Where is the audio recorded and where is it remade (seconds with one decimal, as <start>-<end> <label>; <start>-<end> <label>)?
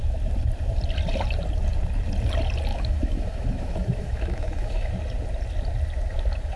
0.0-2.7 recorded; 2.7-4.9 remade; 4.9-6.6 recorded